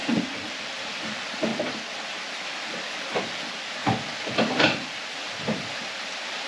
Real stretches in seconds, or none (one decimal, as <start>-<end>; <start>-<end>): 1.5-2.9